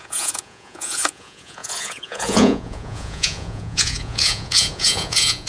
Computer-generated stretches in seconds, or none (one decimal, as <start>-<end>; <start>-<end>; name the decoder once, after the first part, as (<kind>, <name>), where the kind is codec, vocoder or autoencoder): 0.0-5.5 (vocoder, Vocos)